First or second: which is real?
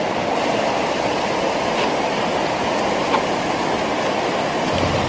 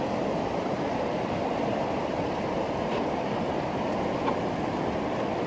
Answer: first